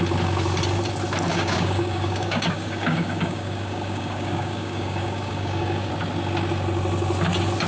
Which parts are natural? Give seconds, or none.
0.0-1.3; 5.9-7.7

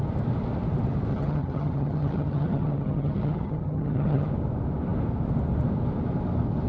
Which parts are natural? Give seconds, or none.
0.0-1.1; 4.3-6.7

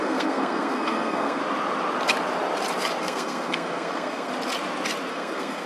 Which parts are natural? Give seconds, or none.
1.4-3.0; 4.3-5.1

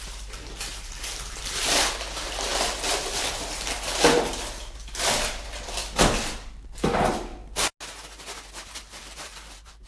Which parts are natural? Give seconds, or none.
5.8-6.8; 7.3-8.5

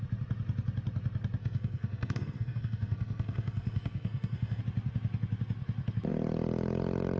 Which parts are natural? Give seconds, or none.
0.0-1.4; 4.6-7.2

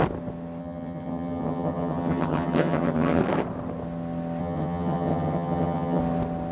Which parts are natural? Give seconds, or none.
0.0-0.6; 3.2-4.4; 6.0-6.5

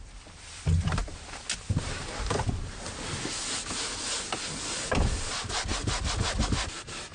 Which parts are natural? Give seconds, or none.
0.0-7.1

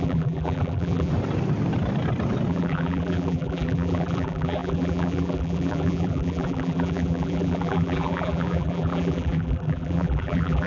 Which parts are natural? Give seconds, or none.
1.1-2.5